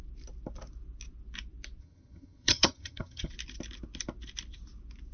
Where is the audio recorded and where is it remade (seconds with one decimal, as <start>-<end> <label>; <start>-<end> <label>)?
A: 0.0-1.8 recorded; 1.8-3.3 remade; 3.3-5.1 recorded